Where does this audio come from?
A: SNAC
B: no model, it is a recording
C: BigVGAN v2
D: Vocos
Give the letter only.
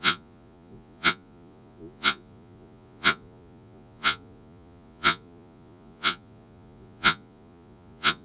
D